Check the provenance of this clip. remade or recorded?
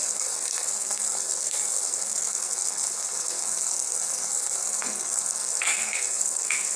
remade